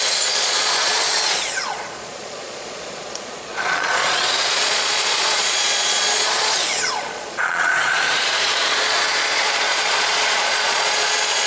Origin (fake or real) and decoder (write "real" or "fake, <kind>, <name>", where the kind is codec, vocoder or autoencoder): fake, vocoder, Vocos